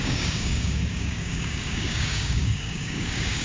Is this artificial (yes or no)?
yes